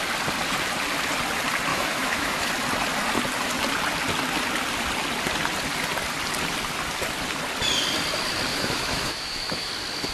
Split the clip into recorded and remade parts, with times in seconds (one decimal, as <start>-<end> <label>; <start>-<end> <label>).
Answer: 0.0-1.7 recorded; 1.7-2.5 remade; 2.5-8.5 recorded; 8.5-9.7 remade; 9.7-10.1 recorded